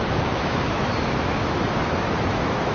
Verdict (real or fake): fake